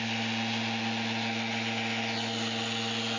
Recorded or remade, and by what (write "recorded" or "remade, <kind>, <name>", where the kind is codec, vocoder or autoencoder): recorded